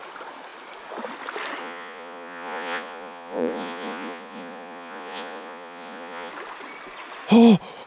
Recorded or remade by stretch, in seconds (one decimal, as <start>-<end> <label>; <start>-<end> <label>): 0.0-1.6 recorded; 1.6-6.3 remade; 6.3-7.9 recorded